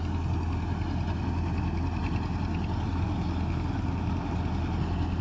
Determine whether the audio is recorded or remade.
recorded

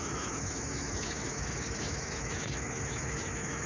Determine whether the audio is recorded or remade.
remade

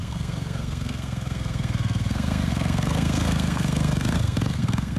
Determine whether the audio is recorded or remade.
remade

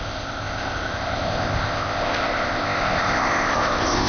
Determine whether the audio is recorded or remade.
remade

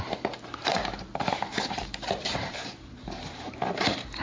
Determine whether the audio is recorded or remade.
remade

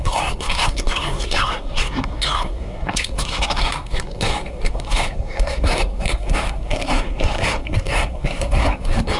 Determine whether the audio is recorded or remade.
remade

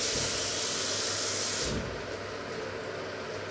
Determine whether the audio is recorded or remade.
recorded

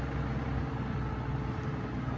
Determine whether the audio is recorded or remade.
recorded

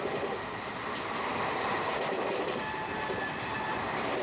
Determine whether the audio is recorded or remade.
recorded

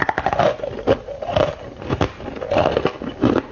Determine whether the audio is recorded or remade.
recorded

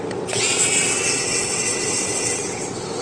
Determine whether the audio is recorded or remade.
remade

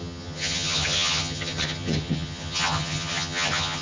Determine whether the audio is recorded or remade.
remade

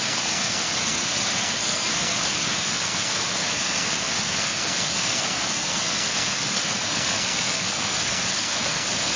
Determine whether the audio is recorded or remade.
remade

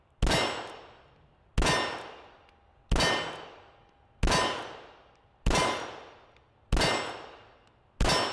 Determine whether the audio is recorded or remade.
recorded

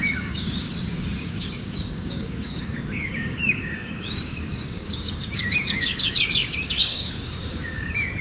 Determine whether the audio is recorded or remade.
remade